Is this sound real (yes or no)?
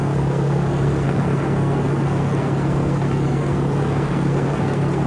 no